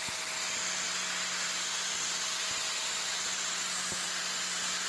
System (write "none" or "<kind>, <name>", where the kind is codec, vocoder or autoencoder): none